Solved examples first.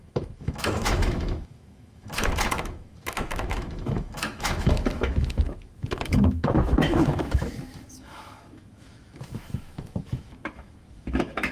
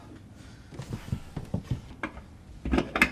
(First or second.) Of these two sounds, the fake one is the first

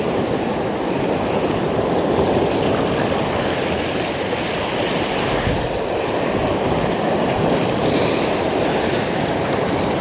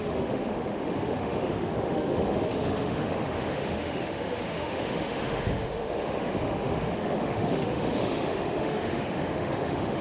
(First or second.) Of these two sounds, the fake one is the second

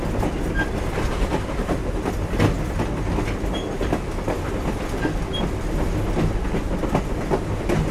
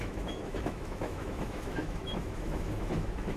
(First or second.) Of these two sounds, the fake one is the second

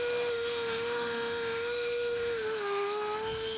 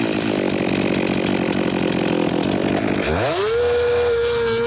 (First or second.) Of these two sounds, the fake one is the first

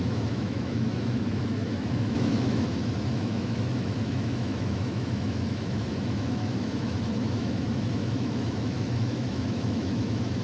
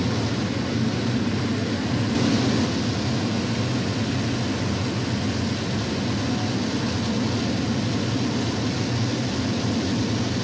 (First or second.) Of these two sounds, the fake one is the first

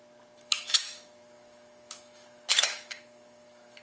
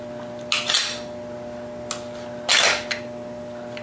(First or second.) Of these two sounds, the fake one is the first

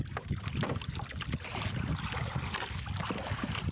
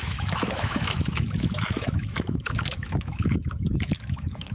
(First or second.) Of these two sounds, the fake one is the second